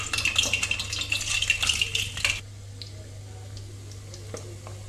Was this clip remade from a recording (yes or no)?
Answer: no